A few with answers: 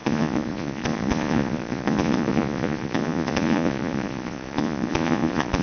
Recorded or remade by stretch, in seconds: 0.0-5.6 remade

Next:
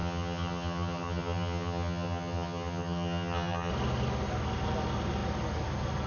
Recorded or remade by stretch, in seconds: 0.0-3.7 remade; 3.7-6.1 recorded

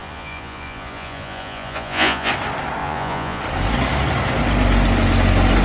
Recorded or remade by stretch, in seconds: 0.0-2.3 remade; 2.3-2.8 recorded; 2.8-3.4 remade; 3.4-5.6 recorded

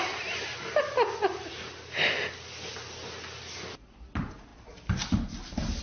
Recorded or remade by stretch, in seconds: 0.0-5.8 recorded

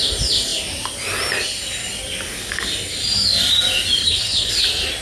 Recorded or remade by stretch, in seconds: 0.0-4.0 recorded; 4.0-4.5 remade; 4.5-5.0 recorded

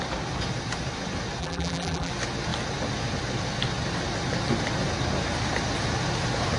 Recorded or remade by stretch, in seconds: 0.0-1.4 recorded; 1.4-2.1 remade; 2.1-6.6 recorded

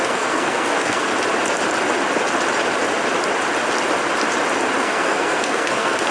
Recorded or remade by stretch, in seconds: 0.0-1.1 remade; 1.1-4.8 recorded; 4.8-6.1 remade